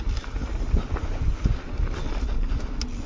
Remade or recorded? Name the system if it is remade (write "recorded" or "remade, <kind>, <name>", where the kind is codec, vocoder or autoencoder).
recorded